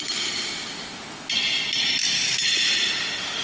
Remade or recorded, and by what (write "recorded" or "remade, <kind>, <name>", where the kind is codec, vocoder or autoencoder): recorded